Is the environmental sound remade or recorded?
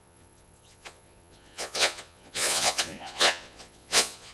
remade